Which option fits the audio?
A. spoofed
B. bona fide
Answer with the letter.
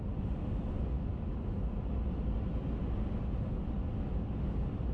B